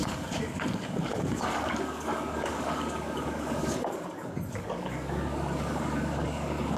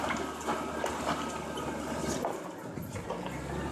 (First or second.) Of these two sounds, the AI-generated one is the first